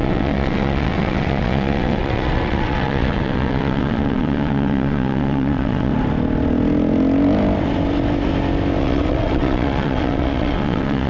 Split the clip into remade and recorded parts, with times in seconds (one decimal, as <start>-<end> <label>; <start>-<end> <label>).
0.0-5.9 remade; 5.9-8.8 recorded; 8.8-11.1 remade